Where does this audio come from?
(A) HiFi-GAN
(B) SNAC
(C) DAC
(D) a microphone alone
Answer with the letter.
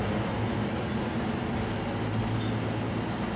D